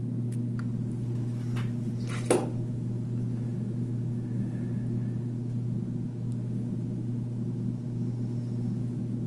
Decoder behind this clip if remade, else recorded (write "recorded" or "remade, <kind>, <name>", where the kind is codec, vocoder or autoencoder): recorded